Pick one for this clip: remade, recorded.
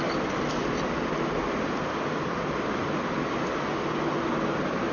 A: recorded